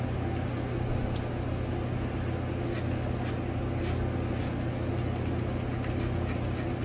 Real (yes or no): yes